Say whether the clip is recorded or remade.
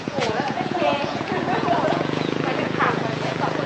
remade